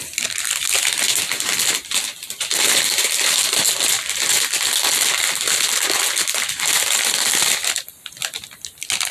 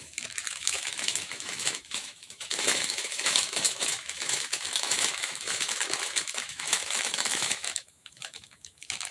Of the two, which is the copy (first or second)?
second